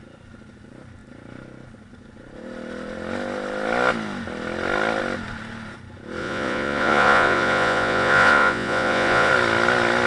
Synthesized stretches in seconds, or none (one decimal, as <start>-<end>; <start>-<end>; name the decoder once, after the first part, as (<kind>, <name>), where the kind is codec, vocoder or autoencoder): 6.2-9.3 (vocoder, Vocos)